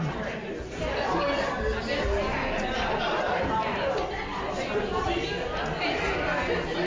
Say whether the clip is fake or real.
real